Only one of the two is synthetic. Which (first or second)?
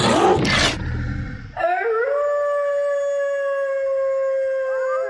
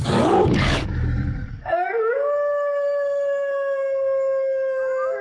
second